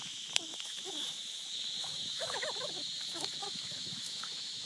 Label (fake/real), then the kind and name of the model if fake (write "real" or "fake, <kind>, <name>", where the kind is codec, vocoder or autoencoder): fake, autoencoder, DAC-VAE